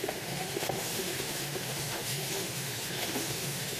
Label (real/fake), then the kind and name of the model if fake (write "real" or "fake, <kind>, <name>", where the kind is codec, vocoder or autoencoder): fake, autoencoder, DAC-VAE